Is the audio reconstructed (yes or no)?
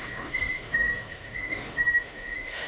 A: yes